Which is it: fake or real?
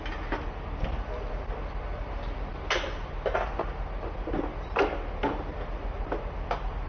real